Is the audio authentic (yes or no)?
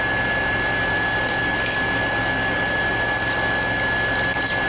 yes